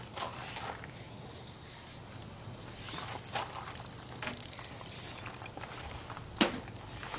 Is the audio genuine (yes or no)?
yes